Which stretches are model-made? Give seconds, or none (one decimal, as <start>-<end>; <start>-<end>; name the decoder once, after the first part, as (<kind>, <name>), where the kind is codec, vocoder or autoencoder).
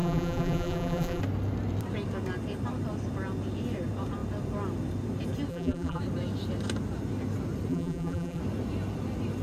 0.0-1.2 (vocoder, BigVGAN v2); 5.5-6.0; 7.7-8.4